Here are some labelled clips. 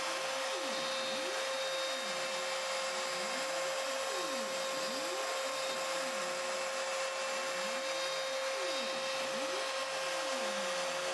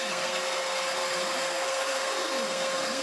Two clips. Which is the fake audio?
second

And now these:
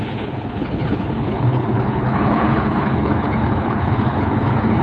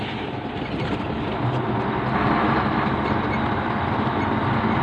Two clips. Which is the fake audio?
first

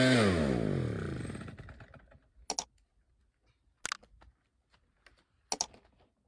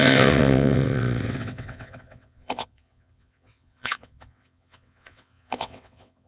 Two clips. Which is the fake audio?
second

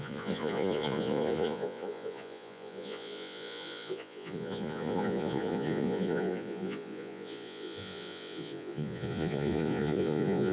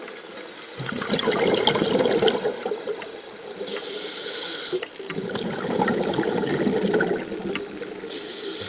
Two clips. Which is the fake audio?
first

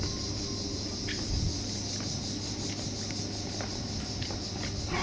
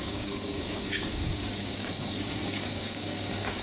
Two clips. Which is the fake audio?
second